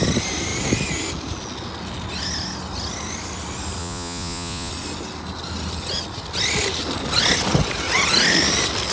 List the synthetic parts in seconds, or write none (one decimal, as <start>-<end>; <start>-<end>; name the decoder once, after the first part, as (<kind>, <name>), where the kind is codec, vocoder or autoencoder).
3.8-4.7 (vocoder, Vocos)